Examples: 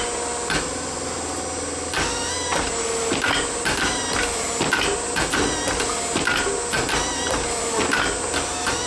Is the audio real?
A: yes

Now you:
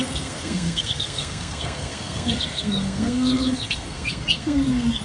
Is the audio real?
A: no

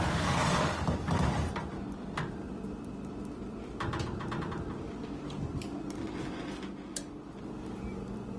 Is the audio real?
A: yes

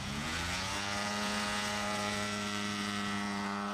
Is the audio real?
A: no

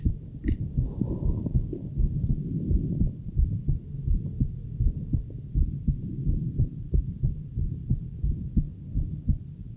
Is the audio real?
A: no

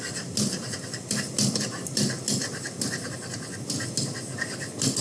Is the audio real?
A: yes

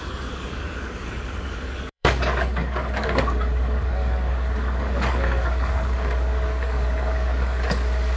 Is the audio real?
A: no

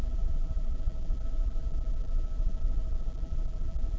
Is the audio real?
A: no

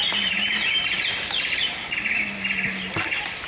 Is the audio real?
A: yes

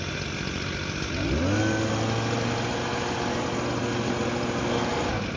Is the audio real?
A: yes